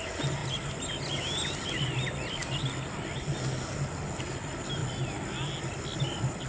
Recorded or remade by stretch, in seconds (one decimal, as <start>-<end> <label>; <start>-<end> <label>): 0.0-6.5 recorded